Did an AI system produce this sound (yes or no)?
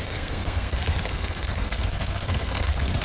yes